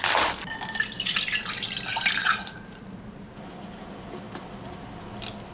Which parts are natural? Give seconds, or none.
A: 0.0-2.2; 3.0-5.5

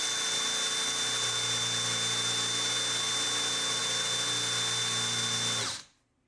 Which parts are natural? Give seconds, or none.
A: 0.0-6.3

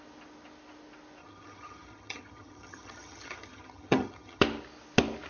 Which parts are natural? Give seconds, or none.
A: 0.0-1.2; 4.4-5.3

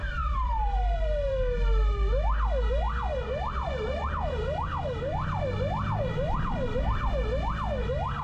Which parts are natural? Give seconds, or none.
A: 1.3-8.2

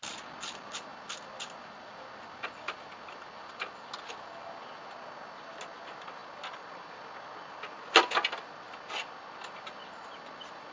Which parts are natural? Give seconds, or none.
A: 0.0-10.7

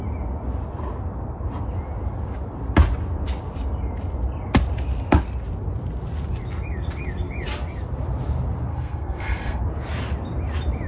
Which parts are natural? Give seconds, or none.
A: 0.0-8.7; 9.6-10.9

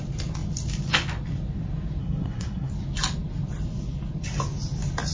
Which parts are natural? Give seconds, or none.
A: 0.0-2.0; 2.7-5.1